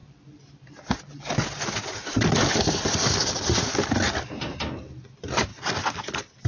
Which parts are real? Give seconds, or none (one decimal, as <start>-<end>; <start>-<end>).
0.0-6.5